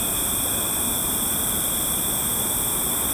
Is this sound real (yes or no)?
yes